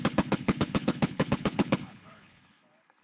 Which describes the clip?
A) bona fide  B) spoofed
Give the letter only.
B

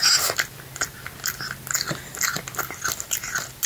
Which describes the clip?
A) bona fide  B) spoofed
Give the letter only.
A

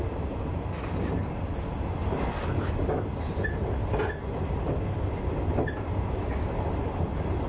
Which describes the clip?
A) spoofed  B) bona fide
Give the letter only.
B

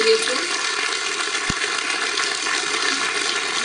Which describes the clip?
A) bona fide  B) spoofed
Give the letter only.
A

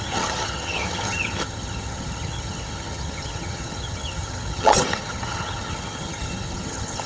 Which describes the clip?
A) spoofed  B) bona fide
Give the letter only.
A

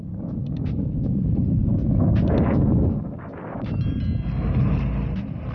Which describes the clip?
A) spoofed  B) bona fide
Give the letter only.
B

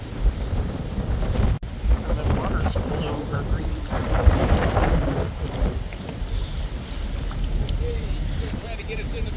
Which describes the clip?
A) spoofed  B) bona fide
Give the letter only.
A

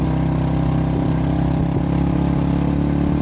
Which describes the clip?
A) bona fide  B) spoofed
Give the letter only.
A